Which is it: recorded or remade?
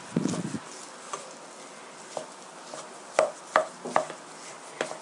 recorded